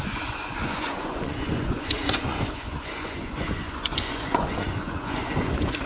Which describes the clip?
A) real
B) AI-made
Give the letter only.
B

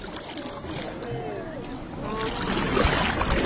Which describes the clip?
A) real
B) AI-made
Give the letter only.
A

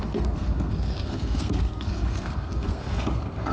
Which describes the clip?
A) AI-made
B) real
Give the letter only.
A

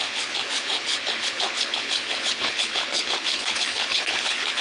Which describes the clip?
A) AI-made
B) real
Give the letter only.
A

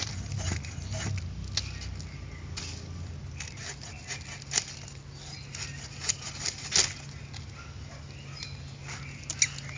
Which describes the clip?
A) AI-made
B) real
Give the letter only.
B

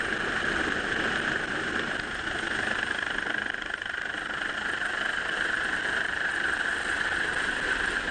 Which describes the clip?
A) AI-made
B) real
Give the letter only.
A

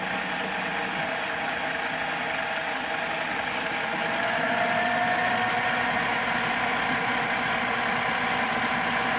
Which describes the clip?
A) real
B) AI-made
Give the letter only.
A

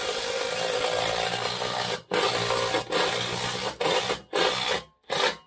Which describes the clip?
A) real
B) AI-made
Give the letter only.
A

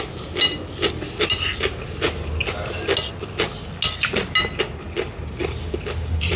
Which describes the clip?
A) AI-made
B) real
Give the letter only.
B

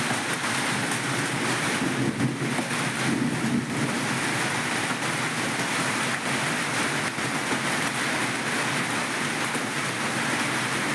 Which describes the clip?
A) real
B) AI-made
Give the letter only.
A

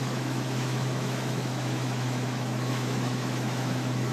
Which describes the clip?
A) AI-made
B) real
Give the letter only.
A